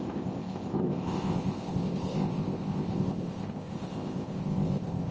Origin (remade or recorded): remade